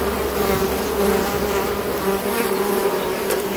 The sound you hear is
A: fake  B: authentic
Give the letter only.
A